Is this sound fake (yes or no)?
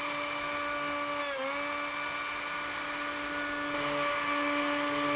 no